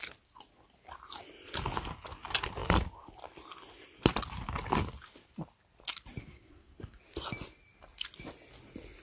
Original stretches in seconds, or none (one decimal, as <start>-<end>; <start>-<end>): 0.0-6.2; 7.0-9.0